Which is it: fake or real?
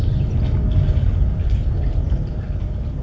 real